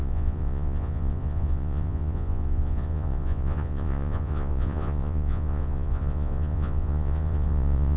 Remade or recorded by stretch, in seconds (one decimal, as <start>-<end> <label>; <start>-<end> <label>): 0.0-8.0 remade